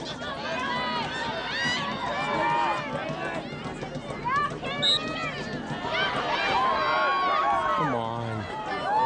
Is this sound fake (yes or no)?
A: no